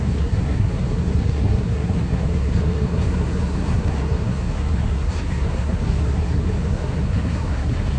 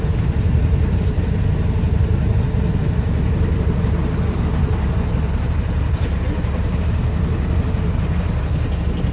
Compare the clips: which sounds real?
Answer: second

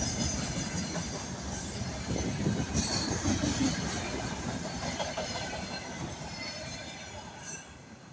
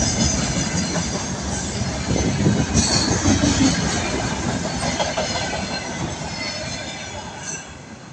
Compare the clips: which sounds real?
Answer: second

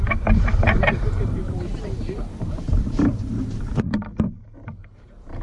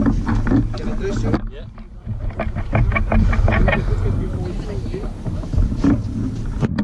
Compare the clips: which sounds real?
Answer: second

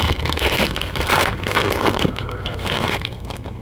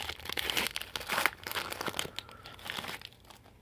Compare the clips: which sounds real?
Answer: second